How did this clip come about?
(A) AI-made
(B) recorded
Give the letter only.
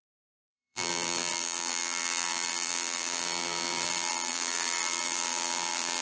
A